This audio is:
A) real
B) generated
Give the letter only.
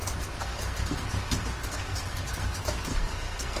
B